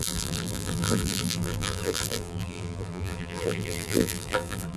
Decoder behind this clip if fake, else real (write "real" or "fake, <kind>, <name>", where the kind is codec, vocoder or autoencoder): fake, vocoder, BigVGAN v2